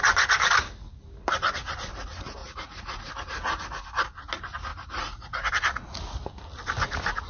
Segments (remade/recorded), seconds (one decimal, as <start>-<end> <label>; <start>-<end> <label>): 0.0-2.4 recorded; 2.4-3.1 remade; 3.1-4.7 recorded; 4.7-5.5 remade; 5.5-7.3 recorded